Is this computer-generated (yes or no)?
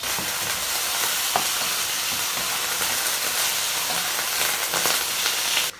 no